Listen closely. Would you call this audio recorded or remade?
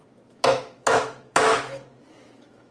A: remade